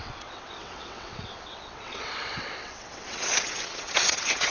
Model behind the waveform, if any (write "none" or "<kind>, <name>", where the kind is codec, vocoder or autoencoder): vocoder, WaveNeXt